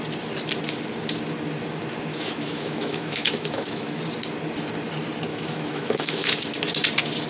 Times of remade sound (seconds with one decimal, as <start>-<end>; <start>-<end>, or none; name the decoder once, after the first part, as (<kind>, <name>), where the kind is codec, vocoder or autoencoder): 2.1-4.0 (autoencoder, DAC-VAE); 5.3-6.4